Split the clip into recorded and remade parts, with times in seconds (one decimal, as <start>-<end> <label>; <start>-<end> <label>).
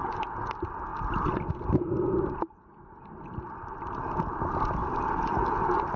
0.0-6.0 recorded